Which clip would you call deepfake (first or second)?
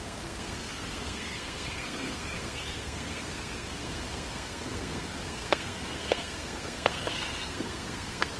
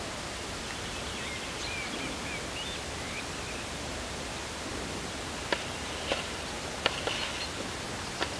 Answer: first